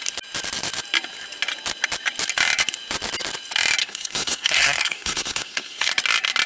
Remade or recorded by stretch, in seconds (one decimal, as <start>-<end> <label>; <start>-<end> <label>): 0.0-3.8 recorded; 3.8-5.9 remade; 5.9-6.5 recorded